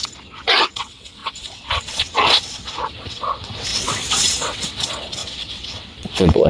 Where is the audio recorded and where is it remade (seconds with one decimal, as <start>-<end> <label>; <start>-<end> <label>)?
0.0-6.5 remade